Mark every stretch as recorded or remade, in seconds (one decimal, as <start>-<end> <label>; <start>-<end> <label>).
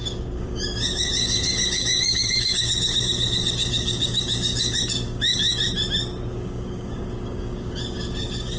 0.0-5.6 remade; 5.6-6.3 recorded; 6.3-8.6 remade